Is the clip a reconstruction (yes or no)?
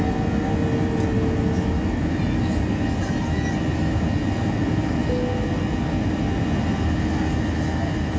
no